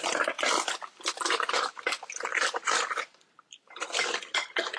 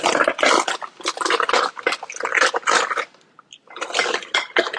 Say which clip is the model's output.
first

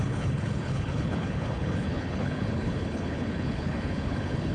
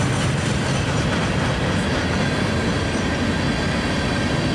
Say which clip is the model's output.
first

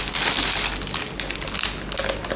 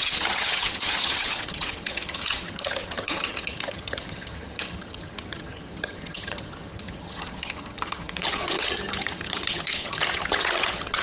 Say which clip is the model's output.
second